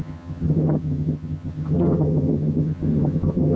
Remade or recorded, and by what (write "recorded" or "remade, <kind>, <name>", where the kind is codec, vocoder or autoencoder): remade, vocoder, HiFi-GAN